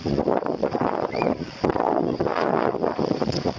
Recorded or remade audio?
remade